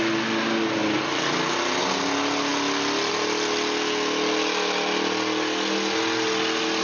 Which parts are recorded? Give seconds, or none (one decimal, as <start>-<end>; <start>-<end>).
0.0-6.8

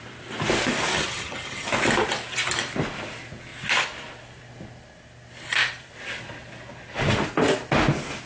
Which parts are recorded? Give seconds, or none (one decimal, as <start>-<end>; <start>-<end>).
0.0-0.9; 1.7-8.3